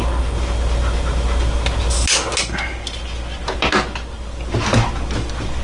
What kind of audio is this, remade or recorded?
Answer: recorded